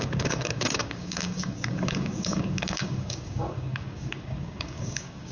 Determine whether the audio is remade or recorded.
remade